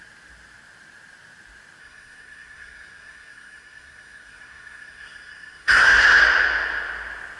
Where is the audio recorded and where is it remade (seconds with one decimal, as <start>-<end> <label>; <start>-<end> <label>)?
0.0-1.8 recorded; 1.8-6.2 remade; 6.2-7.4 recorded